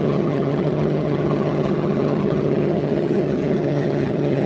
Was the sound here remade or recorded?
remade